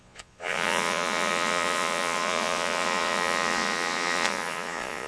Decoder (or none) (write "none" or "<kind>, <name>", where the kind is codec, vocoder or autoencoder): vocoder, Vocos